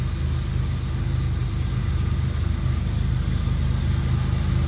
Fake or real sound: real